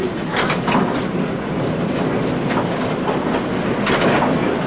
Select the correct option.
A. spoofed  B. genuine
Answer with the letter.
B